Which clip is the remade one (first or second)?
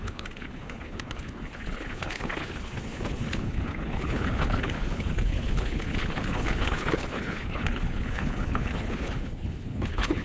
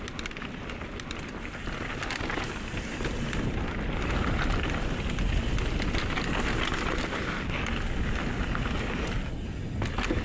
first